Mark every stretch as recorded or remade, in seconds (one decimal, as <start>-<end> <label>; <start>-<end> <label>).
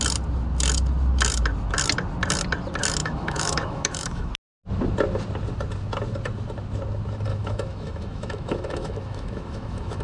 0.0-3.0 recorded; 3.0-4.3 remade; 4.3-7.3 recorded; 7.3-10.0 remade